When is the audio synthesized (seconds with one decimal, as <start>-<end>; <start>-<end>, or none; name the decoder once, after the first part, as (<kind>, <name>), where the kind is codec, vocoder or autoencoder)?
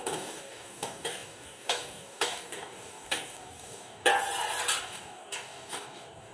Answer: 0.0-4.1 (codec, DAC); 4.8-6.3